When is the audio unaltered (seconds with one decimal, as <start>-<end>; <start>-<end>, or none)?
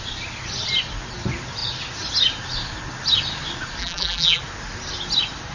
0.0-3.8; 4.4-5.5